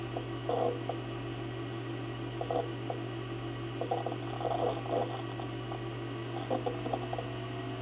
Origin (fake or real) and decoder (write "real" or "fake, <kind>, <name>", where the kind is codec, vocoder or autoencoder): real